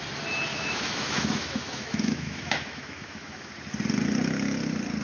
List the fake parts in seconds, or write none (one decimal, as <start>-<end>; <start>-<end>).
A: 0.5-3.5